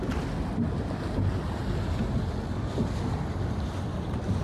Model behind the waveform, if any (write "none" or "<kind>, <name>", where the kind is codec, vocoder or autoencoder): none